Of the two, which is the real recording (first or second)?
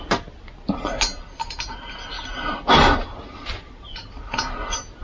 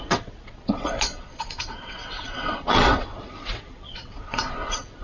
first